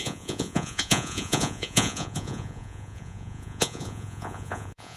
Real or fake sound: fake